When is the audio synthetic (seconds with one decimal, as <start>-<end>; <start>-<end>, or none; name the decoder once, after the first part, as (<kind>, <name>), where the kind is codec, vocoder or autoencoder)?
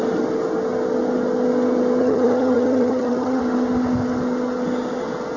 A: 2.0-3.4 (vocoder, HiFi-GAN)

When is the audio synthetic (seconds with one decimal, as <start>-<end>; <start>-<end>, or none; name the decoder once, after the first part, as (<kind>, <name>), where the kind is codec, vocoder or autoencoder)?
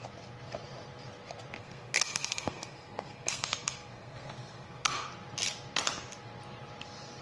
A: 1.6-5.1 (codec, SNAC)